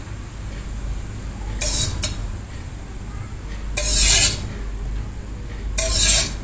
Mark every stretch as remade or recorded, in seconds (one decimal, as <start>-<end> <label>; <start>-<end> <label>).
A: 0.0-2.2 recorded; 2.2-3.4 remade; 3.4-6.4 recorded